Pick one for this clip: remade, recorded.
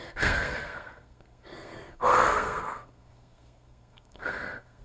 remade